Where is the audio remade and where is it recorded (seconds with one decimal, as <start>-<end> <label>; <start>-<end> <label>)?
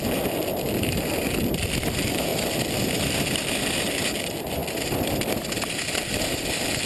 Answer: 0.0-6.9 recorded